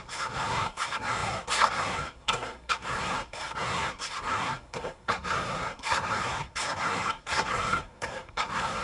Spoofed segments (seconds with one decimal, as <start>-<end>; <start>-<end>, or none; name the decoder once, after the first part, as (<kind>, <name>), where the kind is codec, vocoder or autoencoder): 0.0-8.8 (codec, SNAC)